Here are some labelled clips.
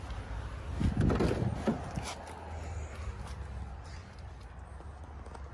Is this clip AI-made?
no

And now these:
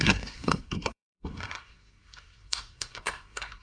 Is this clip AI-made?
yes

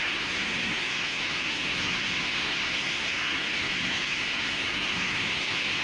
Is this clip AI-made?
yes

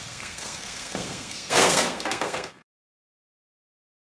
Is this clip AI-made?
yes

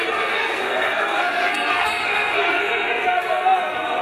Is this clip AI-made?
yes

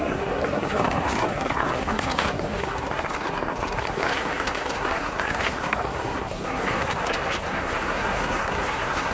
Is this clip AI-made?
yes